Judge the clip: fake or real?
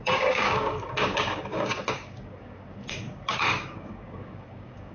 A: fake